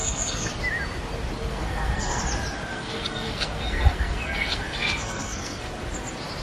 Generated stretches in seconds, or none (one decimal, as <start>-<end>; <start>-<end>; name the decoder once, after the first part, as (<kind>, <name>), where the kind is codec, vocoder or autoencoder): 0.0-0.5 (codec, SNAC); 1.5-2.2; 2.7-5.7

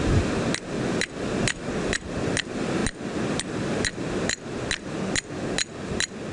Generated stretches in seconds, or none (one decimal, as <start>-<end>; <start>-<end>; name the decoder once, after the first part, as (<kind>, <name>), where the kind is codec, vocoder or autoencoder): none

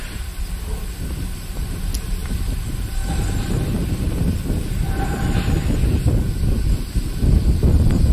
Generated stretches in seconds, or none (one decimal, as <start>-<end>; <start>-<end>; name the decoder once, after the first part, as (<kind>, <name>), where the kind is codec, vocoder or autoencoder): none